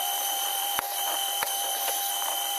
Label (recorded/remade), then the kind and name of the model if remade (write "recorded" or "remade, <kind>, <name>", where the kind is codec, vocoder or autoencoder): remade, vocoder, BigVGAN v2